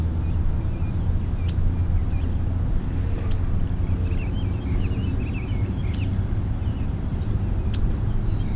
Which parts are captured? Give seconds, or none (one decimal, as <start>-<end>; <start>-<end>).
0.0-8.6